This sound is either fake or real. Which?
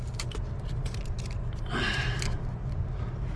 real